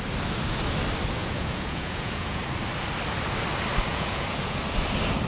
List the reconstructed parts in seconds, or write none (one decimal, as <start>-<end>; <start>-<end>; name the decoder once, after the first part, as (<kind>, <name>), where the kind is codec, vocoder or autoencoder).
1.2-2.4 (vocoder, Vocos); 3.9-4.6

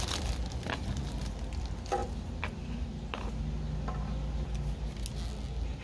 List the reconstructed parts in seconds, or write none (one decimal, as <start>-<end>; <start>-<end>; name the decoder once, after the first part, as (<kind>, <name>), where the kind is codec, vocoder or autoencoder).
none

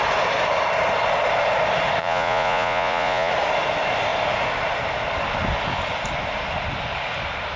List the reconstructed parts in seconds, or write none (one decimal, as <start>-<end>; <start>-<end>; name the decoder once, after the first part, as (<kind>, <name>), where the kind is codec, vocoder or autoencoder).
2.0-3.3 (vocoder, Vocos)

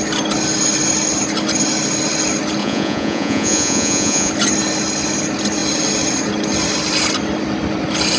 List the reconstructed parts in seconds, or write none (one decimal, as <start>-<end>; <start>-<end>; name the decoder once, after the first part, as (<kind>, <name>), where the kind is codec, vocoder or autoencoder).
2.6-4.3 (vocoder, Vocos)

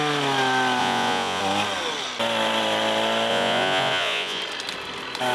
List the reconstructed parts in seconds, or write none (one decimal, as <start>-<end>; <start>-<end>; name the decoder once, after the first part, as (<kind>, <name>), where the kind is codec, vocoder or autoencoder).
0.8-1.4 (vocoder, Vocos); 3.3-4.4

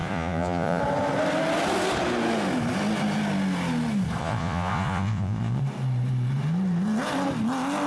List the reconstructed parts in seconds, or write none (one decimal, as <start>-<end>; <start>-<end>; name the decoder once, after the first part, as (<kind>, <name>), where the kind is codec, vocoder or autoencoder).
0.0-0.8 (vocoder, Vocos); 4.2-5.6